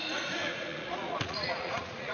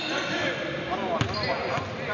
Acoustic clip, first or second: second